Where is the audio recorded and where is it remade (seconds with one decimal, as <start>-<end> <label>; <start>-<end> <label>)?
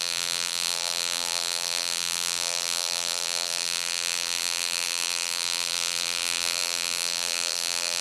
0.0-8.0 remade